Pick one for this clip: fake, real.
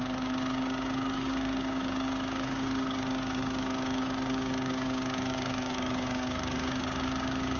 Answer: fake